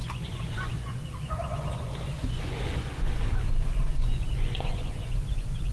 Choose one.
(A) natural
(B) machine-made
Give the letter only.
B